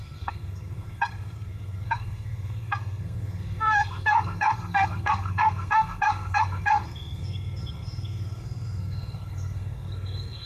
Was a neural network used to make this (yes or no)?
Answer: yes